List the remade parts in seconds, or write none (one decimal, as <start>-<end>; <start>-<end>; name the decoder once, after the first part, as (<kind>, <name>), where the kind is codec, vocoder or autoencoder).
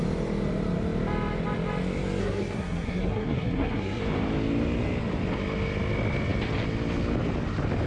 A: 2.2-4.0 (codec, SNAC)